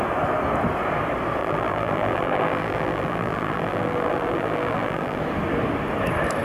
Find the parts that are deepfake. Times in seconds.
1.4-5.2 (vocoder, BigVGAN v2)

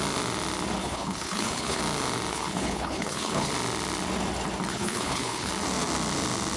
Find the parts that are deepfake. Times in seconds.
0.8-1.8 (codec, HILCodec); 2.3-3.5; 4.7-5.5

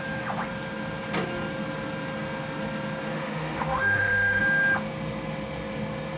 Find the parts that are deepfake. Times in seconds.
3.1-4.4 (autoencoder, DAC-VAE)